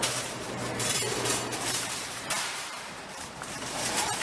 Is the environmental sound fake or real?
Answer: fake